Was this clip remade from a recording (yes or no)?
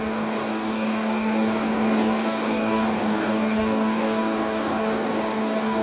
yes